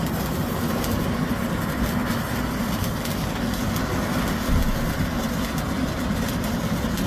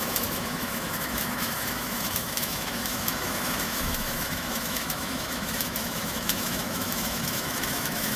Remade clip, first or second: second